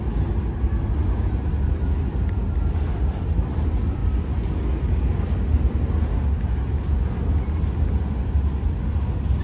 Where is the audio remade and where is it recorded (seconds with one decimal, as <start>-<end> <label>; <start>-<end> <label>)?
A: 0.0-9.4 recorded